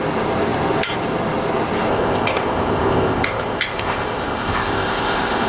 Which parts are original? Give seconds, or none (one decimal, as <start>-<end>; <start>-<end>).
0.0-1.9